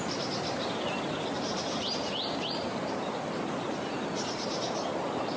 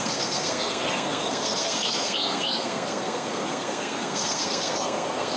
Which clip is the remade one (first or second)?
second